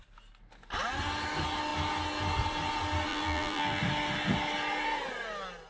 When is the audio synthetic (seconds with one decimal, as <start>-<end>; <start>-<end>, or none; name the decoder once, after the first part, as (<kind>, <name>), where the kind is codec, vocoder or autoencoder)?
3.1-3.8 (vocoder, BigVGAN v2)